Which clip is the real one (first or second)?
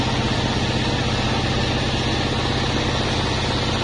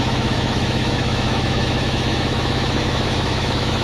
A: first